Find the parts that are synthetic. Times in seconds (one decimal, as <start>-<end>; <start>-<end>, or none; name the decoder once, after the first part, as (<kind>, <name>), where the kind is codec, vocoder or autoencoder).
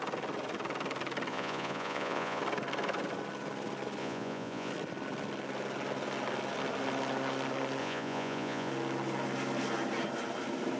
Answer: 1.3-2.4 (vocoder, Vocos); 4.0-4.7; 7.8-8.7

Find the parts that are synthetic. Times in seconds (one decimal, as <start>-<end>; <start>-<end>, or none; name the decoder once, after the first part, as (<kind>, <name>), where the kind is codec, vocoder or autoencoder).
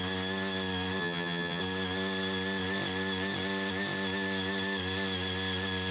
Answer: 1.0-1.6 (vocoder, HiFi-GAN)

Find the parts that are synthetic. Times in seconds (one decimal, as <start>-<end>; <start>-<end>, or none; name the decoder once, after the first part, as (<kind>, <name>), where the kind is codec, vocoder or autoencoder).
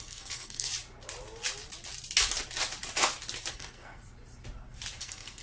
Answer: 0.0-0.7 (codec, SNAC); 3.5-4.0; 5.0-5.4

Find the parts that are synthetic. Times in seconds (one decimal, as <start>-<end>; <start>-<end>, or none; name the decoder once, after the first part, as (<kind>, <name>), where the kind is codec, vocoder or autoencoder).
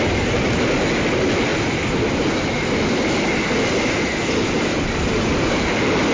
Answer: none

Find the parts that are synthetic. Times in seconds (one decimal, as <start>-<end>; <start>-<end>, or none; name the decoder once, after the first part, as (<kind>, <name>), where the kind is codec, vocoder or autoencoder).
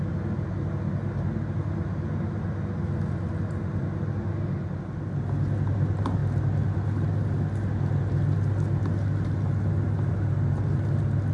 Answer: none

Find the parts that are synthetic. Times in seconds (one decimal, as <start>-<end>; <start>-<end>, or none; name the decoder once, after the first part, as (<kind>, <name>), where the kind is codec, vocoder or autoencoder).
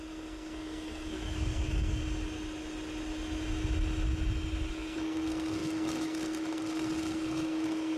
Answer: 0.0-2.0 (codec, SNAC); 4.7-8.0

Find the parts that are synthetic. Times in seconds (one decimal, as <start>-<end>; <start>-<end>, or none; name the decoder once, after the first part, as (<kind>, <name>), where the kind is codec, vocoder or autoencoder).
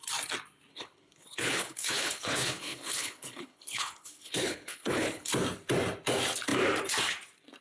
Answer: 0.7-5.3 (codec, HILCodec)